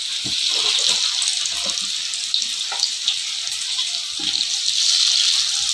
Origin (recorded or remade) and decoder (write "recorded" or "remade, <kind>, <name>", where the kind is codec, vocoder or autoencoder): recorded